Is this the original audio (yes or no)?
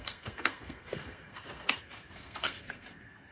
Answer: no